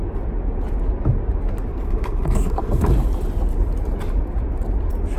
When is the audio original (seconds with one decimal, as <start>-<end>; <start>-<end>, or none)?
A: 0.0-1.7; 2.8-5.2